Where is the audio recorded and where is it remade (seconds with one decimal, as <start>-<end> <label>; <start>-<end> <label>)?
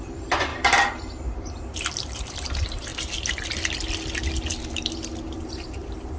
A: 0.0-0.5 remade; 0.5-1.2 recorded; 1.2-2.9 remade; 2.9-5.3 recorded; 5.3-6.2 remade